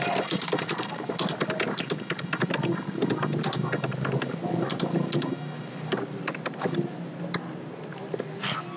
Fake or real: real